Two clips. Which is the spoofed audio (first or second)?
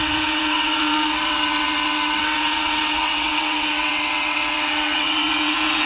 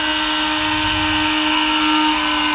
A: first